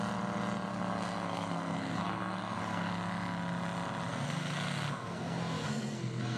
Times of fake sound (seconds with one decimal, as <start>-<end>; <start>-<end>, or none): 0.7-2.9; 4.1-6.4